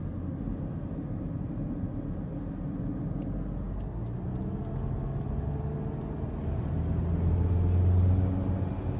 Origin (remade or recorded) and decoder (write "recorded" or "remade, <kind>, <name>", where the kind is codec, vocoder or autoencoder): recorded